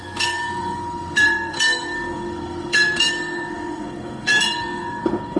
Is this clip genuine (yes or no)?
no